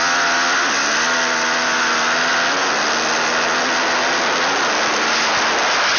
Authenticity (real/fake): real